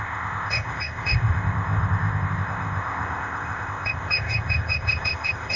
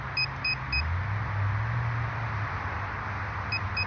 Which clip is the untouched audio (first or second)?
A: second